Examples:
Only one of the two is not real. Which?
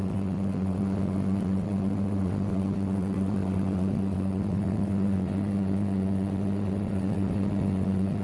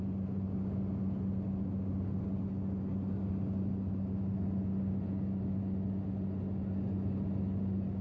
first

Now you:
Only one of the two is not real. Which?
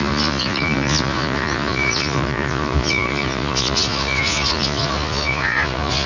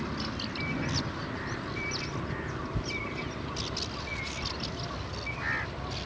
first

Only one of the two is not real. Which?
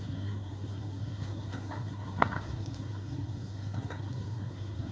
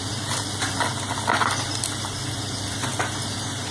first